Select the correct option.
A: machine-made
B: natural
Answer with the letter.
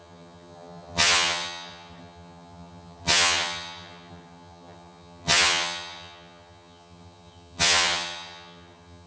A